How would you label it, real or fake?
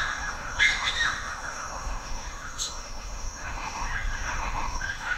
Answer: fake